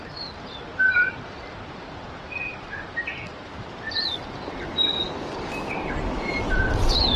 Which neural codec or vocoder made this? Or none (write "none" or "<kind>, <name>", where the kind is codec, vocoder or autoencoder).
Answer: none